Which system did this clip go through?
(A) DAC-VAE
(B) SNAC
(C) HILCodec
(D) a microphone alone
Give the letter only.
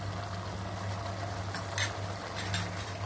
D